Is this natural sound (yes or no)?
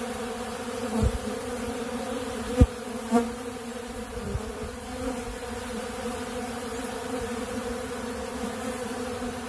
no